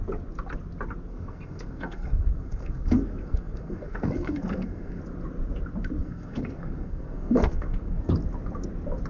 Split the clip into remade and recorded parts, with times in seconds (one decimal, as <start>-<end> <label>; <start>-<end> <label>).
0.0-1.1 recorded; 1.1-5.0 remade; 5.0-6.0 recorded; 6.0-8.1 remade; 8.1-9.1 recorded